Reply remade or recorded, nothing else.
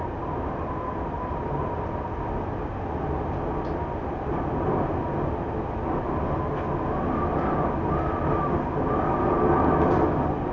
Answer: recorded